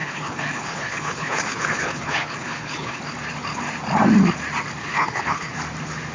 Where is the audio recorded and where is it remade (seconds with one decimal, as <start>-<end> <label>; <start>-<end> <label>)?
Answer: 0.0-3.0 remade; 3.0-4.8 recorded; 4.8-5.5 remade; 5.5-6.1 recorded